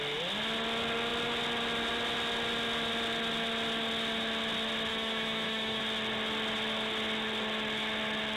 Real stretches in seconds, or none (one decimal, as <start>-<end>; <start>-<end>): 0.0-4.9; 5.8-8.4